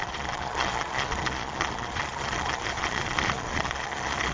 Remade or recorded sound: remade